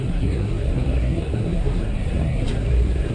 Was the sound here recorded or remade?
remade